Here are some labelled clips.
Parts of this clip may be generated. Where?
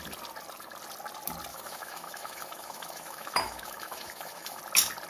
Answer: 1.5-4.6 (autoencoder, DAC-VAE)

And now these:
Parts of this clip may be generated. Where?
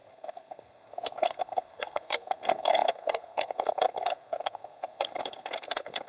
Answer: 0.0-6.1 (codec, SNAC)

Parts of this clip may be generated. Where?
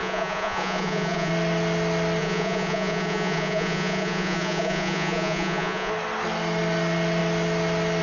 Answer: 0.0-1.3 (vocoder, Vocos); 2.2-5.9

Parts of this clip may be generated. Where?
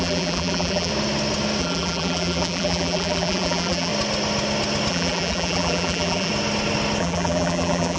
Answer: 0.0-0.9 (vocoder, BigVGAN v2); 1.6-3.9; 4.9-6.3; 7.0-8.0